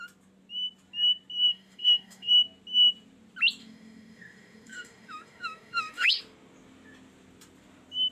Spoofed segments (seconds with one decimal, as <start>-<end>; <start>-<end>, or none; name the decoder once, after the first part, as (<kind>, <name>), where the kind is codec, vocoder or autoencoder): 1.5-2.3 (autoencoder, DAC-VAE); 3.6-6.2